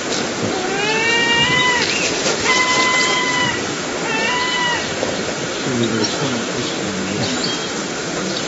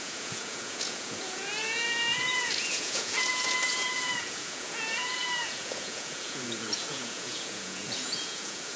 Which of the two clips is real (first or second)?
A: first